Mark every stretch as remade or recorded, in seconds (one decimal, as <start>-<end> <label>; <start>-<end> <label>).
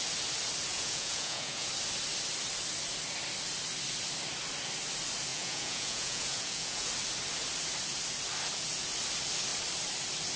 0.0-0.7 recorded; 0.7-1.7 remade; 1.7-5.3 recorded; 5.3-6.9 remade; 6.9-10.4 recorded